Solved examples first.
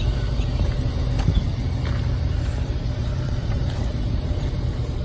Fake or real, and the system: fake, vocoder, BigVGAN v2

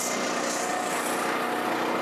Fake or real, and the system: real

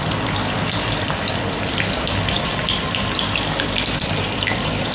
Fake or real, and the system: fake, vocoder, BigVGAN v2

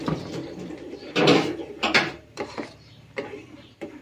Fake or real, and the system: fake, vocoder, BigVGAN v2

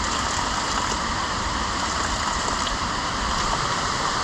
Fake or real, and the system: fake, vocoder, BigVGAN v2